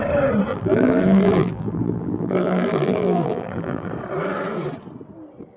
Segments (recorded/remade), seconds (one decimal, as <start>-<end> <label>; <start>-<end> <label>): 0.0-0.5 recorded; 0.5-3.9 remade; 3.9-5.6 recorded